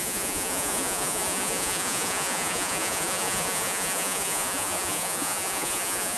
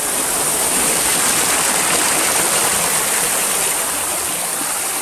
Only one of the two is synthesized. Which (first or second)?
first